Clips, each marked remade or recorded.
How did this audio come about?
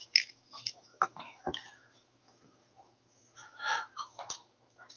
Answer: remade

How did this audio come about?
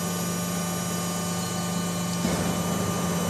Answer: recorded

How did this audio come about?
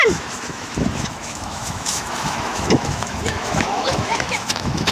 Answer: remade